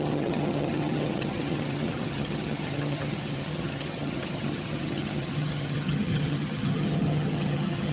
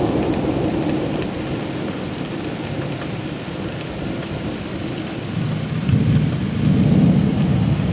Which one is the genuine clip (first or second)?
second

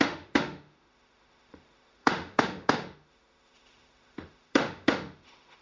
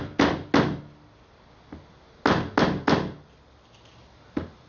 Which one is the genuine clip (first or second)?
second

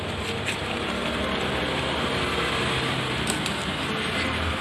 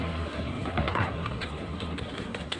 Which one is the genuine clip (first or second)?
first